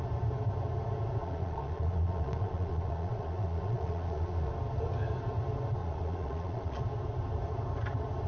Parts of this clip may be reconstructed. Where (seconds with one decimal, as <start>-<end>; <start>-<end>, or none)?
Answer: 1.2-4.5; 5.8-6.8